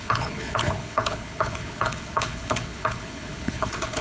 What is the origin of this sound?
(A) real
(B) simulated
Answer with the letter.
B